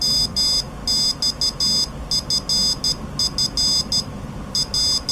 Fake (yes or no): no